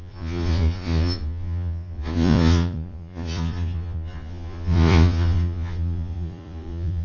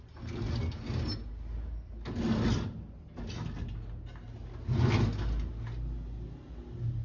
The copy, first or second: first